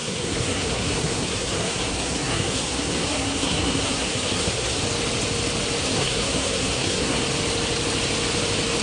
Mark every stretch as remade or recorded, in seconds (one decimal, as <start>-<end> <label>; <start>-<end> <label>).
0.0-4.8 remade; 4.8-5.8 recorded; 5.8-7.2 remade; 7.2-8.8 recorded